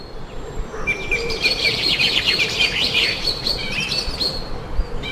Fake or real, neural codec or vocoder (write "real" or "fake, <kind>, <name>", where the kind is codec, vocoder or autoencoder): fake, vocoder, BigVGAN v2